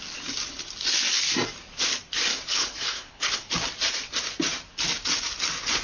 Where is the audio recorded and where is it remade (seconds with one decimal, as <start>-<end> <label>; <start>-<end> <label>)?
0.0-2.3 recorded; 2.3-3.5 remade; 3.5-5.8 recorded